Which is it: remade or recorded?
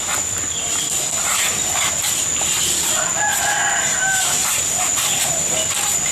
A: recorded